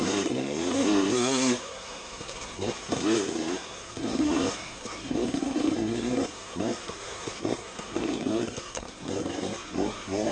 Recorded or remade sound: remade